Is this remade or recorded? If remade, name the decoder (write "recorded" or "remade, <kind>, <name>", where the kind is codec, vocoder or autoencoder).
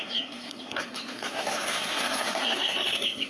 remade, codec, SNAC